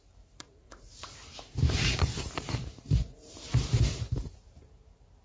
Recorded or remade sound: remade